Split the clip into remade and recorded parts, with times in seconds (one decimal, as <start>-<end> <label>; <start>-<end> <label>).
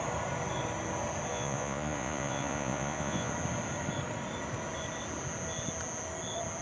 0.0-1.3 recorded; 1.3-3.3 remade; 3.3-6.6 recorded